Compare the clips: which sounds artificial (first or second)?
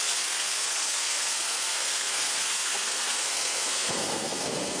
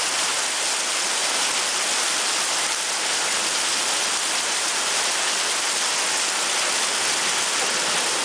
first